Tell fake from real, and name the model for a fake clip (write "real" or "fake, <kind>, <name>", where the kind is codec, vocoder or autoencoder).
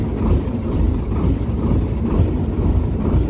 fake, vocoder, BigVGAN v2